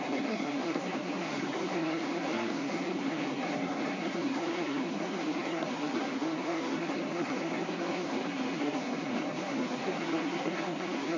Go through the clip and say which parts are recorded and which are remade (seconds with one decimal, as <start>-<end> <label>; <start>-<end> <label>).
0.0-11.2 remade